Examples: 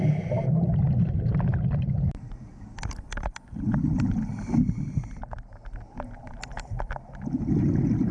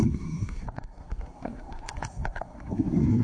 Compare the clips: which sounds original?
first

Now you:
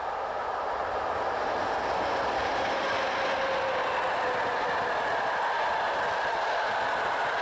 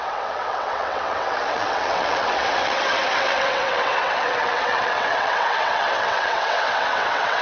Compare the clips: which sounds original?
first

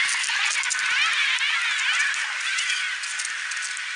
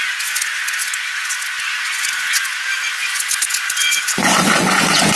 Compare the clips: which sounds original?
first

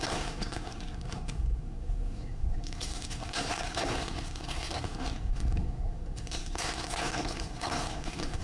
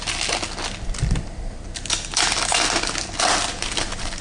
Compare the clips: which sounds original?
second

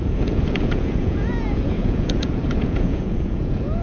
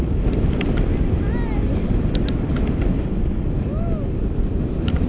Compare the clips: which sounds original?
second